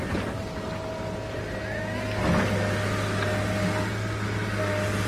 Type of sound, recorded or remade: recorded